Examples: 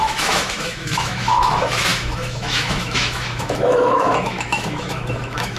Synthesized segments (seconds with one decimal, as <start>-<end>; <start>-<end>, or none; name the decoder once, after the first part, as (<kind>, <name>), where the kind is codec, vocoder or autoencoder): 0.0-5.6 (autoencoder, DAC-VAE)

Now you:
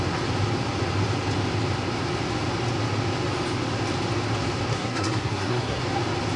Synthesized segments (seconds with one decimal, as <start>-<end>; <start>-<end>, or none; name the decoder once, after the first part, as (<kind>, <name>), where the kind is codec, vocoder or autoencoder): 4.7-5.8 (codec, SNAC)

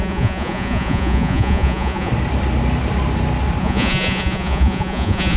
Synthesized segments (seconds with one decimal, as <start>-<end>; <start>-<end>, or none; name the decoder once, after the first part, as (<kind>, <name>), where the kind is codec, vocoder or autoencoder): 0.0-2.1 (vocoder, Vocos); 3.6-5.4

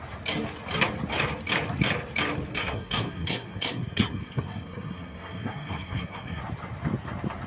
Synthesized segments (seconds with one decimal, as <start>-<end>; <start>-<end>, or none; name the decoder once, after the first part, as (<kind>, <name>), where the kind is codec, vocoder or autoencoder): 2.5-6.4 (codec, SNAC)